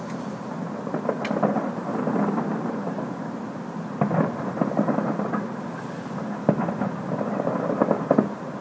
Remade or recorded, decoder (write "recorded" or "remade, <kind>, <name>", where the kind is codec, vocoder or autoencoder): recorded